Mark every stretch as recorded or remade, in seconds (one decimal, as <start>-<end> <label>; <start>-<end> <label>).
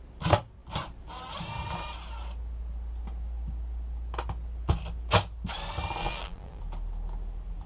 0.0-6.0 recorded; 6.0-6.6 remade; 6.6-7.7 recorded